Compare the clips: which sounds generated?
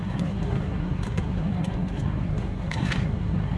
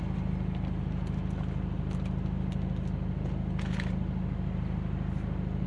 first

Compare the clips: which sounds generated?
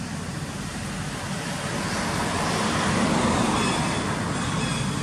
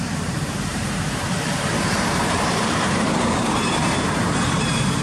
second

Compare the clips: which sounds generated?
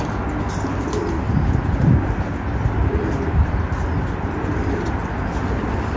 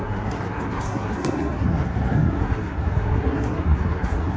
second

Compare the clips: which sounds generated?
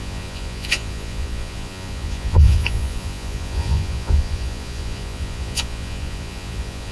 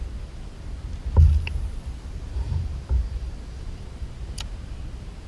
first